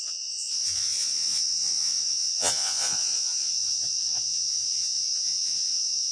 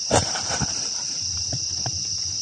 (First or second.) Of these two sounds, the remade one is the first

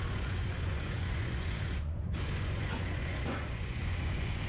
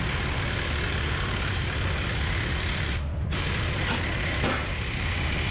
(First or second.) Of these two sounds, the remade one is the first